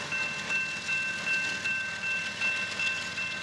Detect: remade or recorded recorded